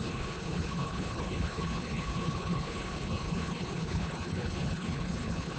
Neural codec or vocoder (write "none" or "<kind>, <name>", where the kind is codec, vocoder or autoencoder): codec, HILCodec